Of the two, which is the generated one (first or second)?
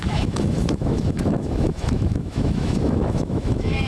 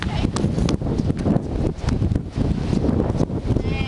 first